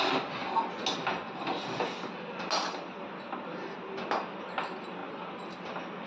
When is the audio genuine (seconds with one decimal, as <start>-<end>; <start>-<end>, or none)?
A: 0.0-6.1

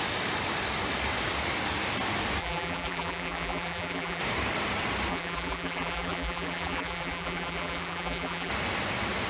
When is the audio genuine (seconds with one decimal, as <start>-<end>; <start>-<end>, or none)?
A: 0.0-2.4; 4.2-5.1; 8.5-9.3